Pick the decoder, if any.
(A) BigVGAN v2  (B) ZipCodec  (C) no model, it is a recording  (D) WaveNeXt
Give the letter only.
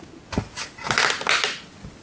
C